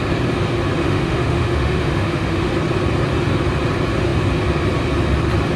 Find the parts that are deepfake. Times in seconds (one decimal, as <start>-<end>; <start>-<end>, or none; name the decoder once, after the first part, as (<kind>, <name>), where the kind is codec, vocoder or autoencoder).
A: 0.8-2.5 (autoencoder, DAC-VAE)